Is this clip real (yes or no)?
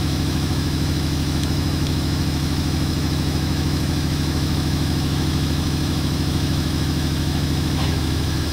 no